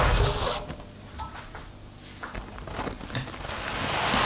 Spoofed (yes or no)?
no